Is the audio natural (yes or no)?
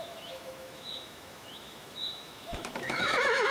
no